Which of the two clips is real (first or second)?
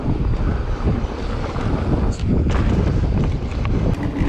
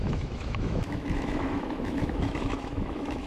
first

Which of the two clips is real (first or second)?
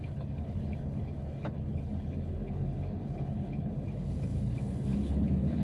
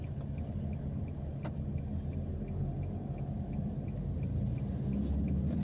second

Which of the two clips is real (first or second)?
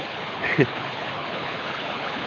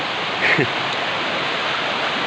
second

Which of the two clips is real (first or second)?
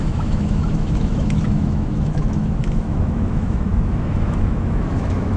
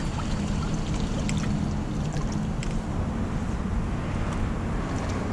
second